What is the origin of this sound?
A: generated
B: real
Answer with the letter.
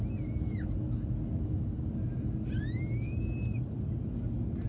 B